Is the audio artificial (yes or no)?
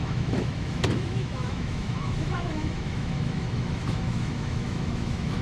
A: yes